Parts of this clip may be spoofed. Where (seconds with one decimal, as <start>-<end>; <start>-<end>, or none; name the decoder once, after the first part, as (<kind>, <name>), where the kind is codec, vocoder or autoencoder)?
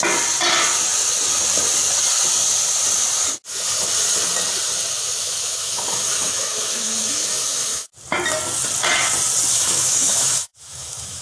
5.2-7.9 (autoencoder, DAC-VAE); 9.5-11.2